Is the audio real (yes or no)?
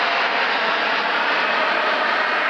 yes